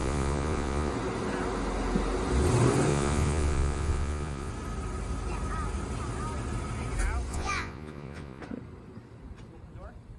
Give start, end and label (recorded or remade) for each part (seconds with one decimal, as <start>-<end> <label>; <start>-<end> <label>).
0.0-0.9 remade; 0.9-2.9 recorded; 2.9-4.5 remade; 4.5-7.3 recorded; 7.3-8.4 remade; 8.4-10.2 recorded